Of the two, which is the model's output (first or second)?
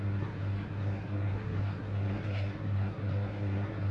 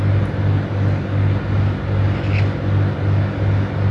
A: first